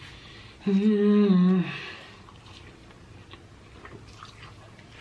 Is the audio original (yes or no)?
yes